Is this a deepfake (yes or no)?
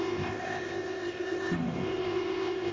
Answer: yes